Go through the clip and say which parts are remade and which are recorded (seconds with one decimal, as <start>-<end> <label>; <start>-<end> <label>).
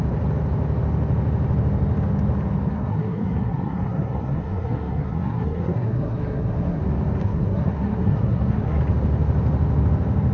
0.0-2.7 recorded; 2.7-6.8 remade; 6.8-7.2 recorded; 7.2-8.8 remade; 8.8-10.3 recorded